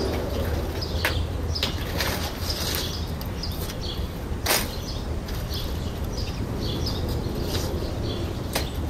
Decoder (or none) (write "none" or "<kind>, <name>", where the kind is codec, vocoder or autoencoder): none